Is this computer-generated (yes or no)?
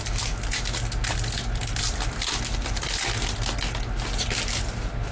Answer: no